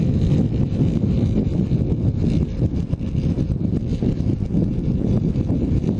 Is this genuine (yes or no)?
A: yes